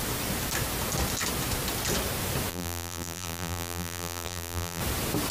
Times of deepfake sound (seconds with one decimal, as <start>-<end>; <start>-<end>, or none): 2.5-4.8